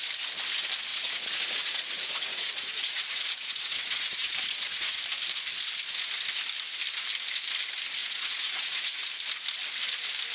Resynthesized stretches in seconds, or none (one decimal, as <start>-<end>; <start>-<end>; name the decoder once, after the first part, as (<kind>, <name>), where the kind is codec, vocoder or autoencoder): 0.9-5.0 (vocoder, Vocos); 8.0-9.1